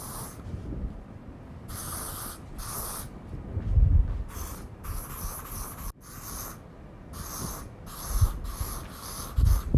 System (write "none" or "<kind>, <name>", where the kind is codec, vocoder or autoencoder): none